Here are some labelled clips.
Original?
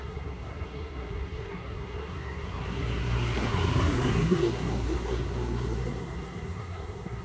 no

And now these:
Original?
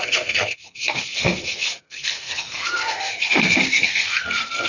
no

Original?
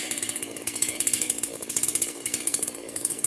no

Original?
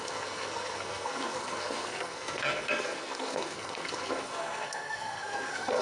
no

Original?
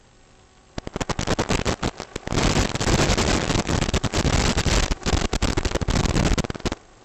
yes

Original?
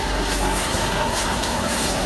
no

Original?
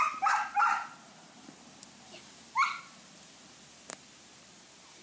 yes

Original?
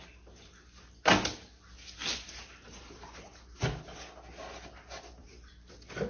yes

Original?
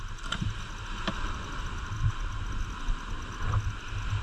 yes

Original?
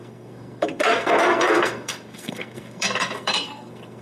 no